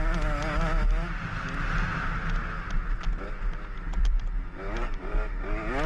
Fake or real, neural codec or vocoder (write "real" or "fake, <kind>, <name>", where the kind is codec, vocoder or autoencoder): real